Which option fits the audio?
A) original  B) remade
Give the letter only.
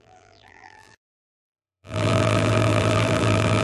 B